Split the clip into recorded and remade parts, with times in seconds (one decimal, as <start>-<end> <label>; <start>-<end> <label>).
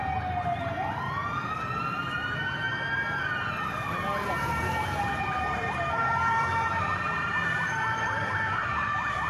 0.0-4.3 recorded; 4.3-9.3 remade